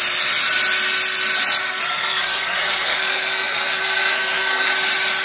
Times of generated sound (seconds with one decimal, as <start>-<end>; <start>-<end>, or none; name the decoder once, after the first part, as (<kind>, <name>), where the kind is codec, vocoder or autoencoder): 1.6-4.7 (codec, SNAC)